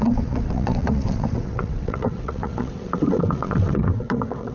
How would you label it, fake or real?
fake